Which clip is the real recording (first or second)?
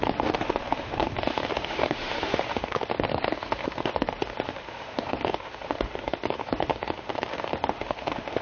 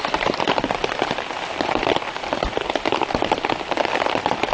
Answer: second